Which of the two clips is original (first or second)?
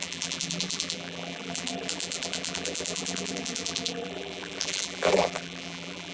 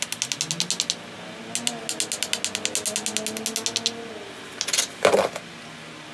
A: second